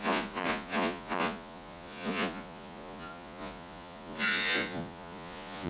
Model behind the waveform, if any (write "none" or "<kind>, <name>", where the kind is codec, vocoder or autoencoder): vocoder, Vocos